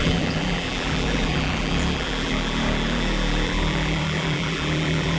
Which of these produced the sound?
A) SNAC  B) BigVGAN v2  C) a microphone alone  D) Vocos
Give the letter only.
B